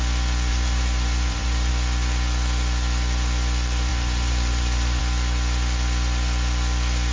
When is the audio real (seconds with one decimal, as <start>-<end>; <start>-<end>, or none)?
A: 0.0-0.5; 1.7-3.9; 5.0-7.1